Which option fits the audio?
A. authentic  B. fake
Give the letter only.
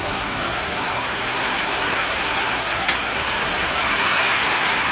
B